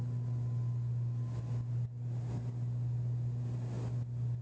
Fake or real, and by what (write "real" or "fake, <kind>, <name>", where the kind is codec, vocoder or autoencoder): real